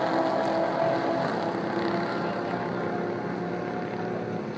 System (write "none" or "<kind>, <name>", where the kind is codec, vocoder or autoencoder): none